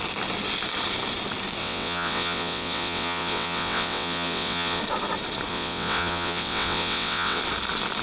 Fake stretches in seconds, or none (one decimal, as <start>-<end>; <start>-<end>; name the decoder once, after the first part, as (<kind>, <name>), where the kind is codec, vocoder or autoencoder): 1.6-4.8 (vocoder, WaveNeXt); 5.5-7.4